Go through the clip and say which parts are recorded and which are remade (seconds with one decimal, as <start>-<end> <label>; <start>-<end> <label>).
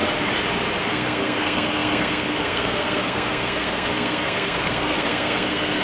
0.0-0.8 recorded; 0.8-5.8 remade